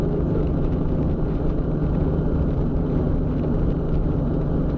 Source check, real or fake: fake